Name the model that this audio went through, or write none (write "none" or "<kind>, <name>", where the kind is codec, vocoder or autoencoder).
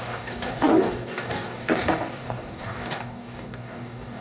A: codec, DAC